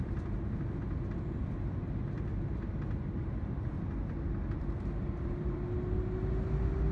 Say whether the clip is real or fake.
real